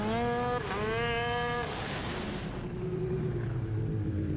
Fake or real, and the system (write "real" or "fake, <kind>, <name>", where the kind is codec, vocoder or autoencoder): real